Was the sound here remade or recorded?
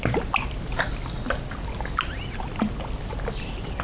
recorded